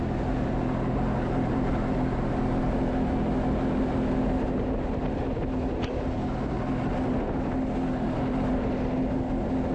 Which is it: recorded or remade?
recorded